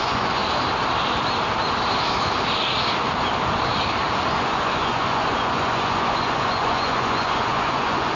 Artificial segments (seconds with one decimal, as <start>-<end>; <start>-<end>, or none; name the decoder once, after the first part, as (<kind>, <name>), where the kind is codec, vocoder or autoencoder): 0.0-0.4 (vocoder, Vocos); 4.3-8.2